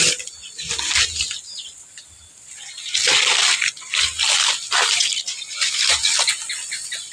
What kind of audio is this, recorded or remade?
recorded